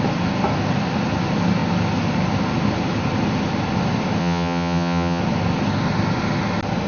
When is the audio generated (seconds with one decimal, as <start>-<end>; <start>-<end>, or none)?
4.2-5.2